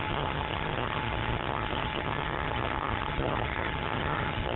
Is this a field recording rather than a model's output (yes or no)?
no